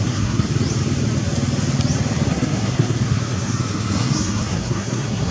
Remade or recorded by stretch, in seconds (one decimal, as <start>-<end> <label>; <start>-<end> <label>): 0.0-0.5 remade; 0.5-2.3 recorded; 2.3-5.3 remade